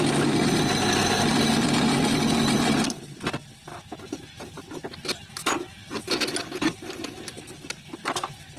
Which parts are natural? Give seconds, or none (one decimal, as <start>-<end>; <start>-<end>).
0.0-8.6